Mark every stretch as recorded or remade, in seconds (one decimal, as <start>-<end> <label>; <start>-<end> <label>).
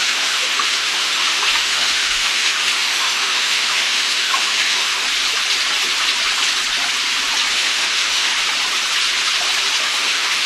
0.0-4.9 remade; 4.9-7.5 recorded; 7.5-8.3 remade; 8.3-9.8 recorded; 9.8-10.5 remade